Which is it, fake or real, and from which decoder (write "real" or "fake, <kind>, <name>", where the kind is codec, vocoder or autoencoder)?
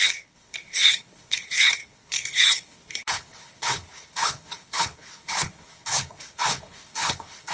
fake, codec, HILCodec